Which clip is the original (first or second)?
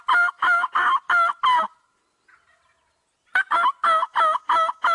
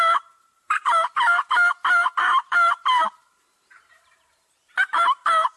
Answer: first